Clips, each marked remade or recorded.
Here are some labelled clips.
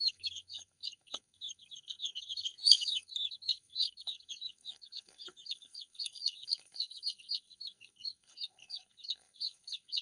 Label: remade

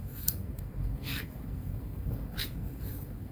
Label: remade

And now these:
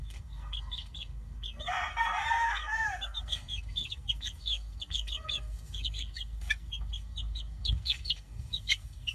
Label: remade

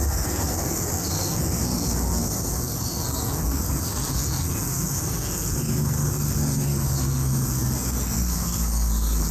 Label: remade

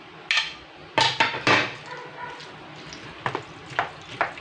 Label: recorded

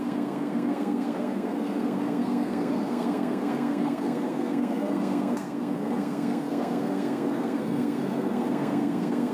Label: remade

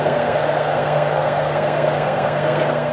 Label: remade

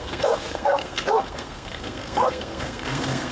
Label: remade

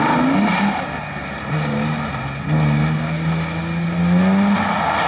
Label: recorded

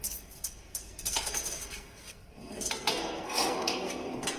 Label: remade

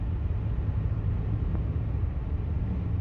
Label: recorded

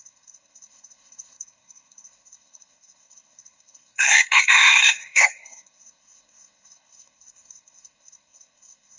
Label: remade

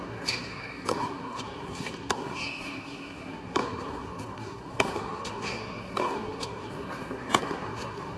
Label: remade